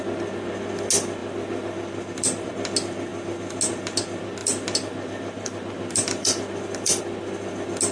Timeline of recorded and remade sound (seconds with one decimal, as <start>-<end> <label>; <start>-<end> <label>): 0.0-1.2 recorded; 1.2-2.5 remade; 2.5-4.4 recorded; 4.4-7.0 remade; 7.0-7.9 recorded